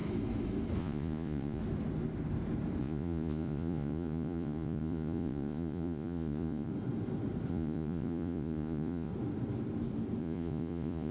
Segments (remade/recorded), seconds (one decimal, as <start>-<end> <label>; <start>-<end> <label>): 0.0-0.8 recorded; 0.8-1.6 remade; 1.6-2.8 recorded; 2.8-6.7 remade; 6.7-7.5 recorded; 7.5-9.1 remade; 9.1-10.2 recorded; 10.2-11.1 remade